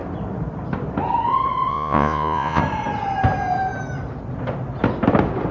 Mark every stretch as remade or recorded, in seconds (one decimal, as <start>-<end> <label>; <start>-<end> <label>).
0.0-1.7 recorded; 1.7-2.6 remade; 2.6-5.5 recorded